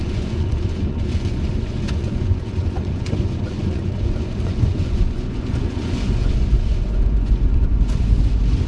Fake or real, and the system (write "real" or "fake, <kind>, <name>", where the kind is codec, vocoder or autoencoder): fake, vocoder, Vocos